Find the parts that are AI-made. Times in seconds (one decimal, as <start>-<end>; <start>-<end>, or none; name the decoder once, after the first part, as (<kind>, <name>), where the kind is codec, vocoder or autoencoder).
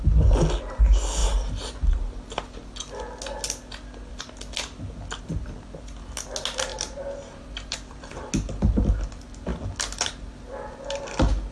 6.7-8.3 (vocoder, BigVGAN v2)